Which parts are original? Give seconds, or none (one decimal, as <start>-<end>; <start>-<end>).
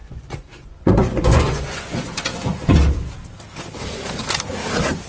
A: 3.1-5.1